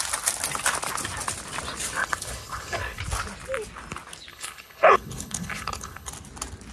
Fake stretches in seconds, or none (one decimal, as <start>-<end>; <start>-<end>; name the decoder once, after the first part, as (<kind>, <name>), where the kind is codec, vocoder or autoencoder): 2.0-3.0 (codec, HILCodec); 4.3-6.1